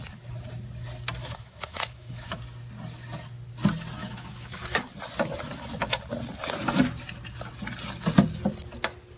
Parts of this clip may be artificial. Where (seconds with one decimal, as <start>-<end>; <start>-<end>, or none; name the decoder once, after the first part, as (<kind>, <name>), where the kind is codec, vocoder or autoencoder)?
1.2-2.3 (autoencoder, DAC-VAE); 4.0-4.8